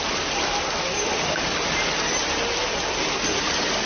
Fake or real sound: real